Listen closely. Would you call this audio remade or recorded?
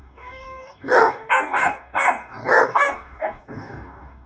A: remade